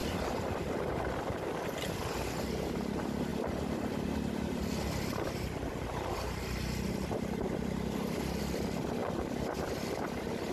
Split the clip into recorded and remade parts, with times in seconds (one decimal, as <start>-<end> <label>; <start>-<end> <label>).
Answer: 0.0-1.1 remade; 1.1-3.3 recorded; 3.3-8.4 remade; 8.4-9.0 recorded; 9.0-10.5 remade